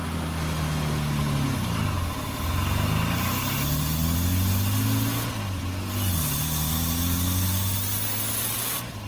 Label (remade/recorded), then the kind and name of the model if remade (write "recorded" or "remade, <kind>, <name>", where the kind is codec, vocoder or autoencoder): recorded